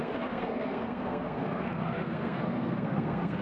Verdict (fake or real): fake